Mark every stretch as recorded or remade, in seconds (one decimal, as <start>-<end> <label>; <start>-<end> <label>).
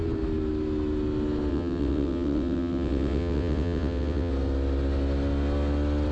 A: 0.0-1.5 recorded; 1.5-4.3 remade; 4.3-6.1 recorded